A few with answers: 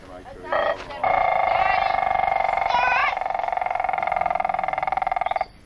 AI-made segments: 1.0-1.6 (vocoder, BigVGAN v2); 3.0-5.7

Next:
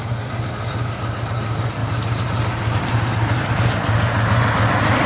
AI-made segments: none

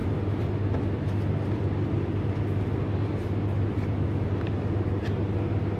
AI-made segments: none

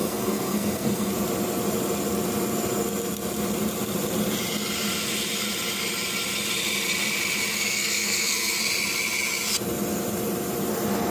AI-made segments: 0.0-1.1 (codec, SNAC); 7.5-8.6

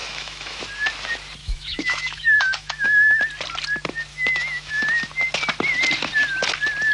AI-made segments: 0.0-0.6 (autoencoder, DAC-VAE); 1.4-3.2; 4.1-4.7

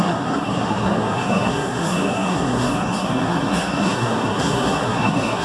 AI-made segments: 0.0-5.4 (codec, SNAC)

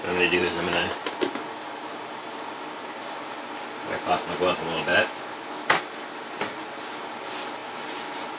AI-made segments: none